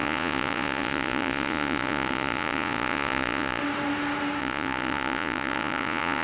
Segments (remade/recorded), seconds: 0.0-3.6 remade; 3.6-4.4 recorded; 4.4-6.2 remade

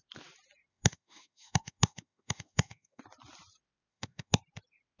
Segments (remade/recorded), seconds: 0.0-0.7 recorded; 0.7-3.0 remade; 3.0-3.9 recorded; 3.9-4.4 remade; 4.4-5.0 recorded

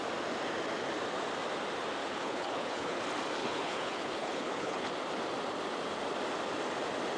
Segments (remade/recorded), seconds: 0.0-2.0 recorded; 2.0-3.0 remade; 3.0-3.4 recorded; 3.4-4.9 remade; 4.9-7.2 recorded

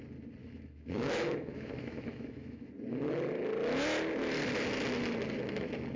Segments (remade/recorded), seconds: 0.0-0.4 recorded; 0.4-2.7 remade; 2.7-6.0 recorded